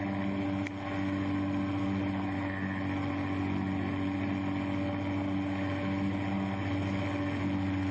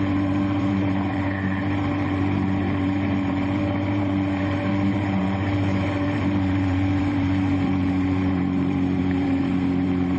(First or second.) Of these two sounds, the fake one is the second